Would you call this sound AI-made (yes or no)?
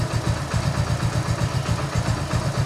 no